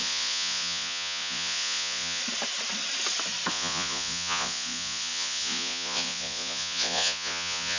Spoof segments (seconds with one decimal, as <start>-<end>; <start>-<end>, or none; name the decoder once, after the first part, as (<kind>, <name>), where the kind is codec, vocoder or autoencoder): 0.0-2.2 (vocoder, Vocos); 3.5-7.8